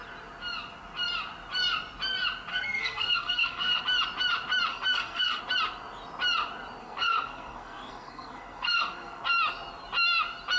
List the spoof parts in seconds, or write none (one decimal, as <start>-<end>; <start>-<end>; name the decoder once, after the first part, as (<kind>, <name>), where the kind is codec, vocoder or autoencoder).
2.5-3.8 (codec, SNAC); 4.7-5.4; 6.8-9.2